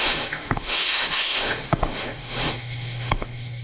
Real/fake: fake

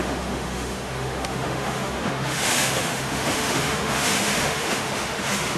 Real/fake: fake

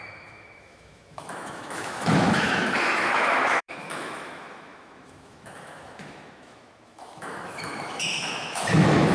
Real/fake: fake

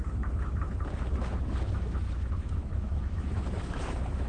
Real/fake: fake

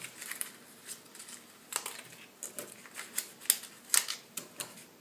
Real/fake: real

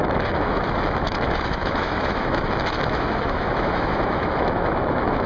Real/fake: fake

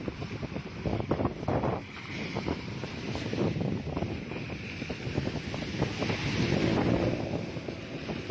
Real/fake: real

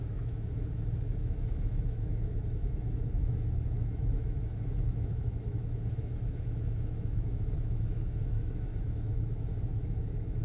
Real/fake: fake